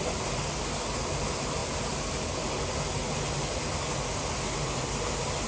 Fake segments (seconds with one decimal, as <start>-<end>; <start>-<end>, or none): none